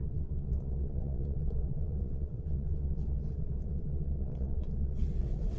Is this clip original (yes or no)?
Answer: no